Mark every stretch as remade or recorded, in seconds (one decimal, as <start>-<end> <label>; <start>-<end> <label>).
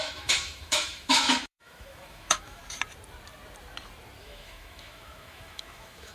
0.0-2.6 remade; 2.6-4.2 recorded; 4.2-6.1 remade